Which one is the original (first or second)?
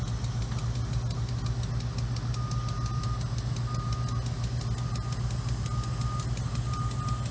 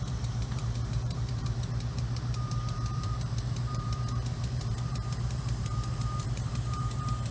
first